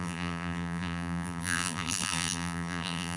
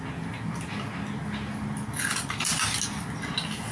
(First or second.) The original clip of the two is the second